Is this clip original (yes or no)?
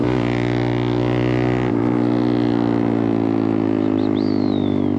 yes